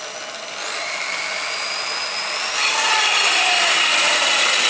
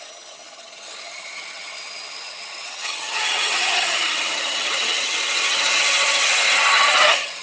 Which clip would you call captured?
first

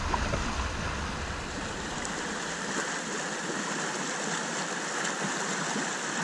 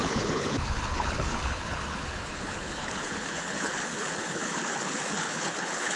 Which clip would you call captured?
first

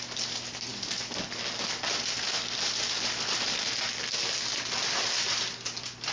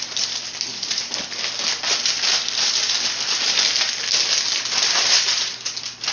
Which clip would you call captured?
first